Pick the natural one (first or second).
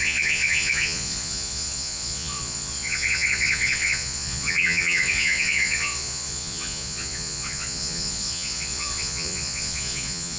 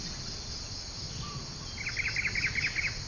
second